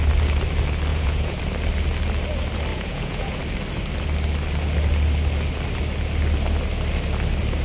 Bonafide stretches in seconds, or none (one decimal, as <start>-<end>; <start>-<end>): 0.0-0.9; 1.4-2.7; 3.4-7.6